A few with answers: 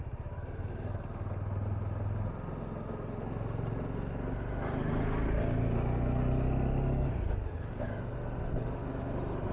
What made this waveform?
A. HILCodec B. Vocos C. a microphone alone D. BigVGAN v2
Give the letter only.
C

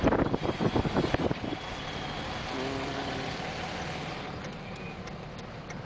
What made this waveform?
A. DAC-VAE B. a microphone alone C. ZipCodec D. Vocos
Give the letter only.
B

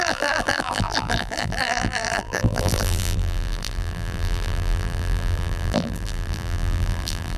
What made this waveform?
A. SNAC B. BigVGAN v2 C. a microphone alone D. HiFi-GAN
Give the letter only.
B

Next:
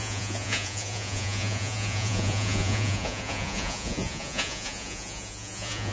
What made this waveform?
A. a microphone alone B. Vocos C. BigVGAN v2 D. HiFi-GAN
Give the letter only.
B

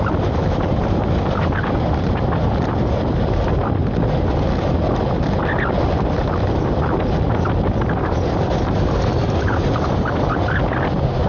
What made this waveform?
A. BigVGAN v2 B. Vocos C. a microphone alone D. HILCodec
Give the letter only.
C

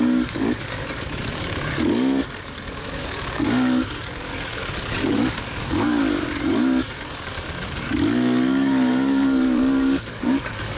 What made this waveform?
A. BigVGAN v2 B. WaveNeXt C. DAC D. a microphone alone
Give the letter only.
C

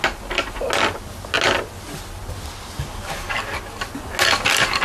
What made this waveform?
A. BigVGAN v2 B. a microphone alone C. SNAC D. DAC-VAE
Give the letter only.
B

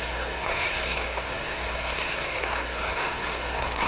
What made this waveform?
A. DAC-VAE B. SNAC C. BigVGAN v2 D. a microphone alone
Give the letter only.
B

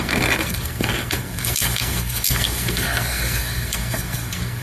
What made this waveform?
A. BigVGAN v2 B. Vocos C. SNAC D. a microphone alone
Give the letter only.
C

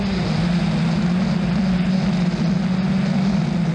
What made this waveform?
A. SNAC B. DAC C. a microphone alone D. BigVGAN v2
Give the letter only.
C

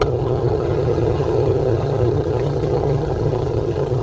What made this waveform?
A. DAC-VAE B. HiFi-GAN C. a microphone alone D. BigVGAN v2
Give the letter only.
B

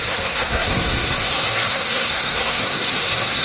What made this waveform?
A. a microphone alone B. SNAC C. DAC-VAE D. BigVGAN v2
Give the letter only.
B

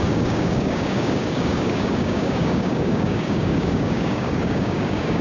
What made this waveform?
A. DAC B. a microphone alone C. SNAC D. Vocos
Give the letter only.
A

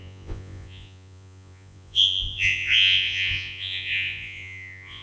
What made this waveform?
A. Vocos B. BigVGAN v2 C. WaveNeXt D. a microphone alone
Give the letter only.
A